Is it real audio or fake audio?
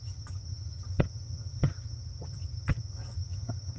fake